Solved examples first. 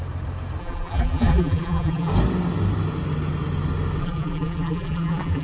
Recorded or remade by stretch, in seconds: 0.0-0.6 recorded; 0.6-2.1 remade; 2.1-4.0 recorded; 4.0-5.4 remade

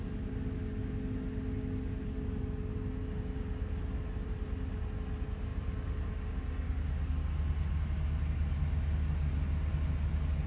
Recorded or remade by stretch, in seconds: 0.0-10.5 recorded

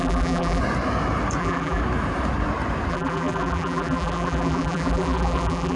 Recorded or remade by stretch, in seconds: 0.0-0.6 remade; 0.6-1.4 recorded; 1.4-1.8 remade; 1.8-2.9 recorded; 2.9-5.8 remade

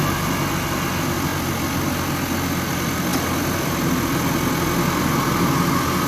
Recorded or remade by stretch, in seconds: 0.0-1.3 recorded; 1.3-1.8 remade; 1.8-6.1 recorded

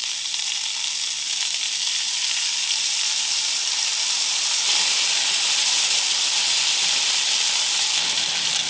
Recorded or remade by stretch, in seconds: 0.0-8.7 recorded